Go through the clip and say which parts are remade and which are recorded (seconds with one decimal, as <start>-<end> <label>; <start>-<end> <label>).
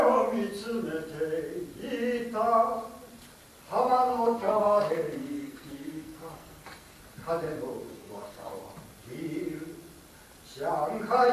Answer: 0.0-4.1 recorded; 4.1-7.0 remade; 7.0-7.9 recorded; 7.9-8.6 remade; 8.6-11.3 recorded